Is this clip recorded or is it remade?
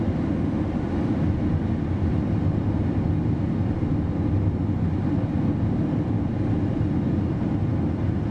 recorded